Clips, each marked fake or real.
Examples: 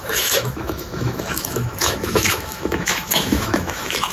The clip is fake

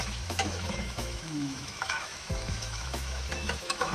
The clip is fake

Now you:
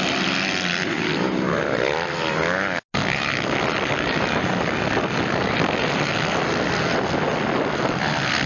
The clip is real